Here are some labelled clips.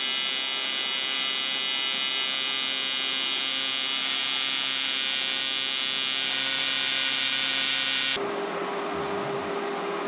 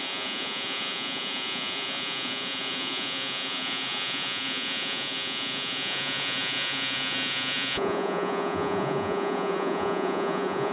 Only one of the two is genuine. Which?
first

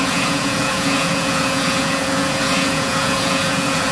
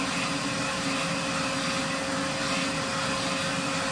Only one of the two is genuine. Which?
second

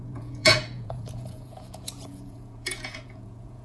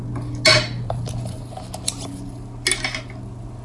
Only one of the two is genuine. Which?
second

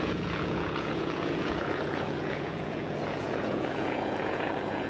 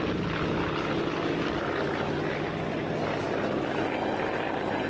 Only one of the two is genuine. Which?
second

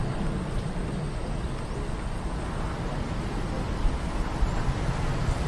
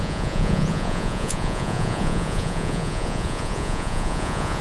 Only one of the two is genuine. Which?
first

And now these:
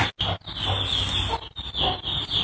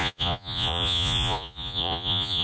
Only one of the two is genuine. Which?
first